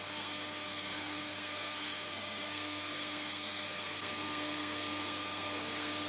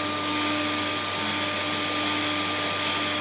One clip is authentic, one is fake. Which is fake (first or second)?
first